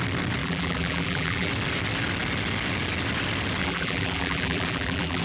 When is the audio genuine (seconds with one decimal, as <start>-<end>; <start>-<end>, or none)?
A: 0.0-0.4; 1.5-3.6